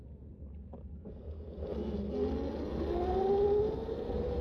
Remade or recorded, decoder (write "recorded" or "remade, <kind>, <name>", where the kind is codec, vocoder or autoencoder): recorded